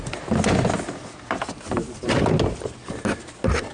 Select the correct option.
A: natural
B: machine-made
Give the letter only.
A